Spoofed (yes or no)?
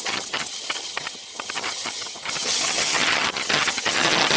yes